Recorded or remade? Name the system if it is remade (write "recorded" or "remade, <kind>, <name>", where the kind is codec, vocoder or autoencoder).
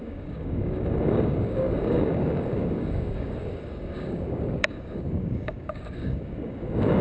remade, codec, DAC